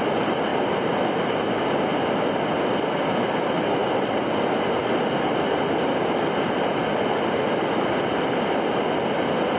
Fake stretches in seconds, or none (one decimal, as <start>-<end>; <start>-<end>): none